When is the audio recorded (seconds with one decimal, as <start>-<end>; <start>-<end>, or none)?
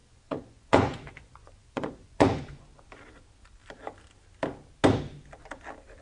2.6-6.0